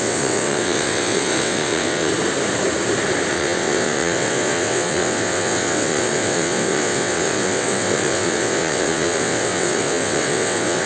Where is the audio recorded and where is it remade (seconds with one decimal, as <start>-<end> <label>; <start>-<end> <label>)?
0.0-2.1 remade; 2.1-3.3 recorded; 3.3-10.9 remade